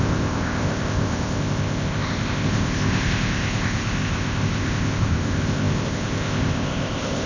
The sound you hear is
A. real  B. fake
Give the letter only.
B